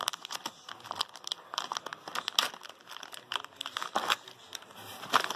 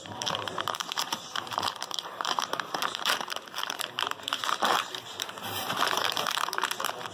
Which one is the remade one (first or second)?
second